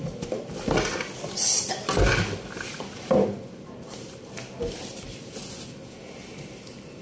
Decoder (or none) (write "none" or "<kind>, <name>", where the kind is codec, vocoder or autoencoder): none